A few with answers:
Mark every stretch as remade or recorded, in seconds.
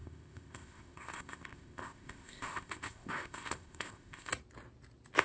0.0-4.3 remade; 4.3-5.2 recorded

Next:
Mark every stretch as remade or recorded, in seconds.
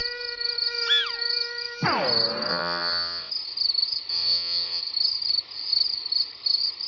0.0-2.5 recorded; 2.5-3.3 remade; 3.3-4.1 recorded; 4.1-4.8 remade; 4.8-6.9 recorded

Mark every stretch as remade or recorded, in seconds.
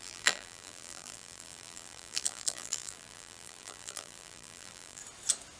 0.0-5.0 remade; 5.0-5.6 recorded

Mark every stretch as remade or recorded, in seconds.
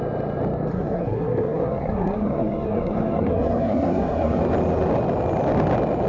0.0-0.7 recorded; 0.7-4.4 remade; 4.4-6.1 recorded